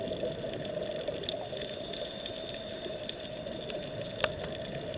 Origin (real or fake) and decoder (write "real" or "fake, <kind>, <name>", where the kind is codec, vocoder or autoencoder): real